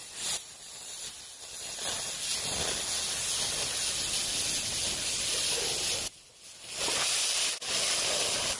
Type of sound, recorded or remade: recorded